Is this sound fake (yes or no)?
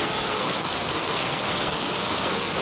yes